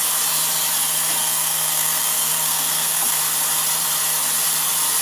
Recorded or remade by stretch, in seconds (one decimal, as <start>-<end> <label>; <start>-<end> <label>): 0.0-1.2 recorded; 1.2-3.2 remade; 3.2-5.0 recorded